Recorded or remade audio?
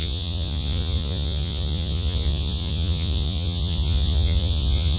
remade